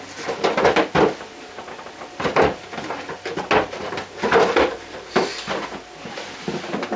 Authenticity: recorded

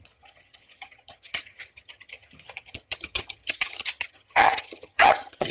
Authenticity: remade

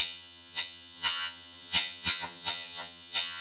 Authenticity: remade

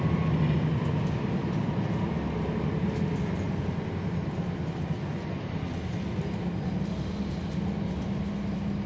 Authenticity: recorded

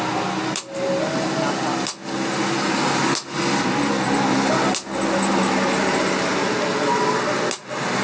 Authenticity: recorded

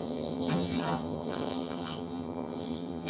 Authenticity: remade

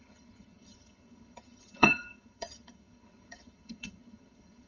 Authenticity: remade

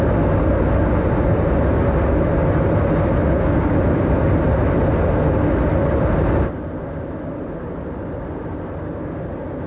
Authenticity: recorded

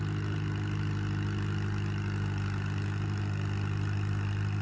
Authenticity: recorded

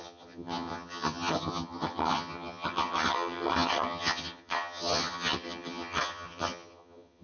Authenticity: remade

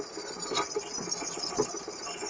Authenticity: recorded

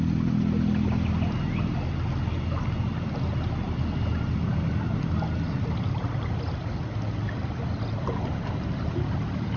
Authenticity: recorded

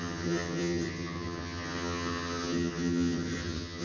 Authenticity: remade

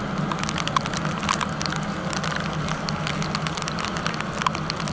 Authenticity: recorded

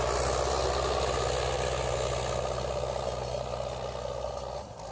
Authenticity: recorded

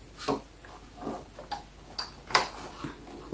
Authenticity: recorded